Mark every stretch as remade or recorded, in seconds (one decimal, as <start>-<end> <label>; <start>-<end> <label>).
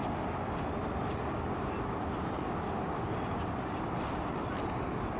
0.0-5.2 recorded